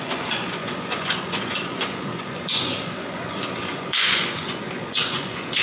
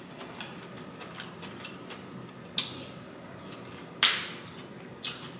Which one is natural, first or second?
second